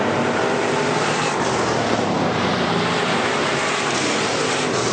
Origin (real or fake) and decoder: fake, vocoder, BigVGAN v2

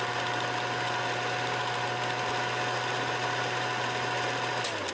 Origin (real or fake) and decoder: real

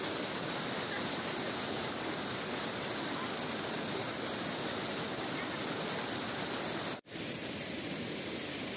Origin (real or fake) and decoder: real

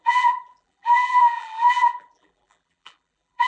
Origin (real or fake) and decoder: fake, vocoder, BigVGAN v2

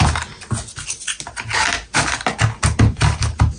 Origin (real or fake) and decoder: real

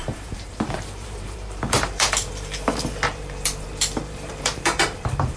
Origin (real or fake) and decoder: fake, vocoder, BigVGAN v2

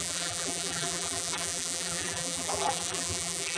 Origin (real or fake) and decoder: fake, vocoder, BigVGAN v2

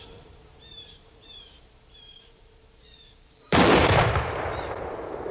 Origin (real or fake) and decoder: fake, vocoder, BigVGAN v2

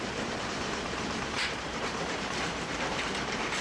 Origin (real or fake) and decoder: fake, vocoder, BigVGAN v2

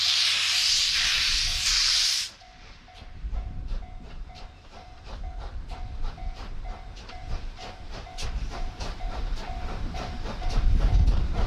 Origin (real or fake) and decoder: fake, vocoder, BigVGAN v2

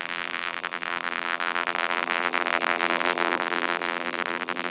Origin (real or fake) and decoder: fake, vocoder, BigVGAN v2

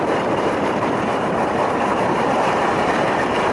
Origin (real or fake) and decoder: fake, vocoder, BigVGAN v2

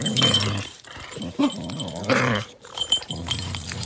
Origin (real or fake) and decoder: fake, vocoder, BigVGAN v2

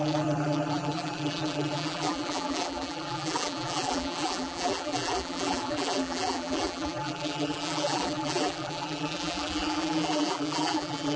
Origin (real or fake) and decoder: fake, vocoder, BigVGAN v2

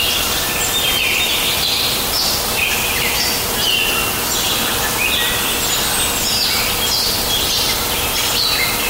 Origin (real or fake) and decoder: real